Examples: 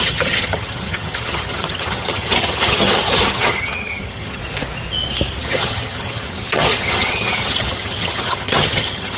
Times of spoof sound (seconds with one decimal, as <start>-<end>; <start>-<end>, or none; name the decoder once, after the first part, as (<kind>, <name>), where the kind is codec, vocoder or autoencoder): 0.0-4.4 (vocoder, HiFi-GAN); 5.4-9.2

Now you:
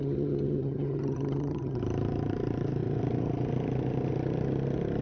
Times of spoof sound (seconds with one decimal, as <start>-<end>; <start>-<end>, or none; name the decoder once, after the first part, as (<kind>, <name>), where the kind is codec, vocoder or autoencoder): 0.0-1.8 (vocoder, HiFi-GAN)

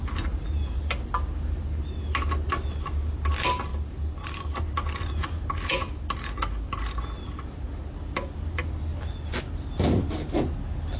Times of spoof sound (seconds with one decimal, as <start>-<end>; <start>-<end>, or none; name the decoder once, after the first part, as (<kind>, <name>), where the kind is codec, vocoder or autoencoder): none

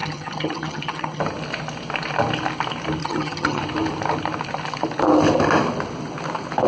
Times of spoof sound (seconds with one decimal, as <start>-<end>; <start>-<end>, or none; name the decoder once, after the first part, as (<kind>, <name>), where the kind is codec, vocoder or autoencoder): 0.0-1.2 (vocoder, HiFi-GAN); 3.0-3.6